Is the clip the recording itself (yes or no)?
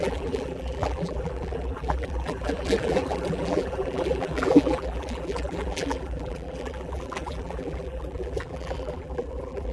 no